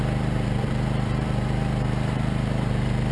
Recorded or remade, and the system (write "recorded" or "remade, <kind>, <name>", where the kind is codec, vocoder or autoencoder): remade, vocoder, BigVGAN v2